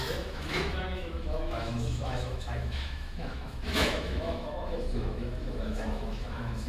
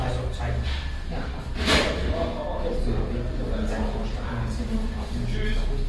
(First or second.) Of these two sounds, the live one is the second